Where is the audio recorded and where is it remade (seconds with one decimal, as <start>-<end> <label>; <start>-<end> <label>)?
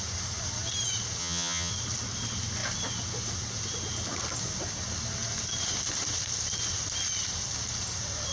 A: 0.0-1.2 recorded; 1.2-1.7 remade; 1.7-8.3 recorded